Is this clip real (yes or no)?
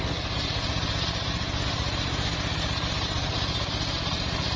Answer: no